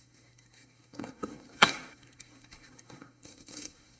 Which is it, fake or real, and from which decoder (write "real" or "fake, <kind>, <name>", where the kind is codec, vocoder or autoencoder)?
fake, codec, SNAC